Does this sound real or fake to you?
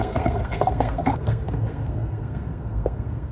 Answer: fake